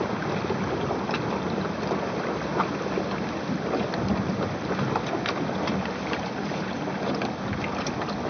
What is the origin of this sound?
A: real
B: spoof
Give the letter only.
A